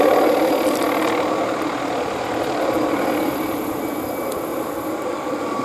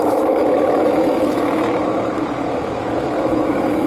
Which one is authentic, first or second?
first